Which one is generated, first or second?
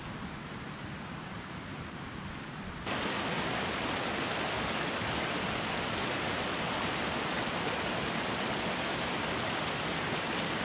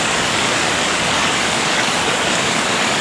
second